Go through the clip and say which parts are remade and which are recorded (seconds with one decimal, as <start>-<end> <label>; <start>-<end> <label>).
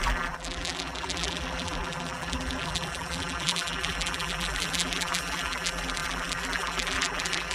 0.0-7.5 remade